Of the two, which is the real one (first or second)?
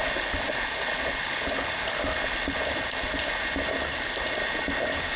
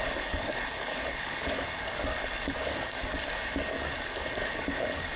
first